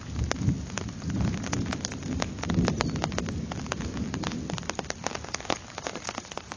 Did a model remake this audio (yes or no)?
no